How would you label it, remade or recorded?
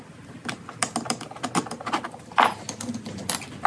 recorded